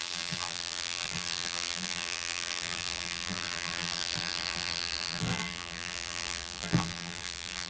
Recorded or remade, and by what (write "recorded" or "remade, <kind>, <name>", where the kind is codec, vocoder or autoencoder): remade, vocoder, BigVGAN v2